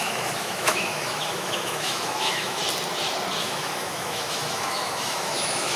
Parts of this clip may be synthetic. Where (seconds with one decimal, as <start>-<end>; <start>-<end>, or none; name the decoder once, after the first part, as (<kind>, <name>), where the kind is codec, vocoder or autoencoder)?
0.0-2.6 (autoencoder, DAC-VAE); 3.4-5.8